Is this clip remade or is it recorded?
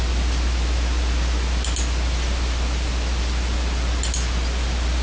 recorded